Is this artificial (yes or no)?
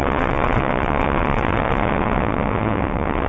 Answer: yes